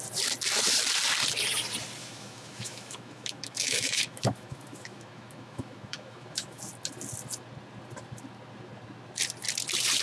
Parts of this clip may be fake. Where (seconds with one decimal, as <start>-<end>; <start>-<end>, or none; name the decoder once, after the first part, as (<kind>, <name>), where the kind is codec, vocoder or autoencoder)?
2.0-6.6 (autoencoder, DAC-VAE)